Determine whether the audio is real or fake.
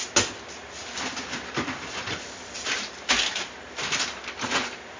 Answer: real